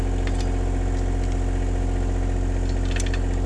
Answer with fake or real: real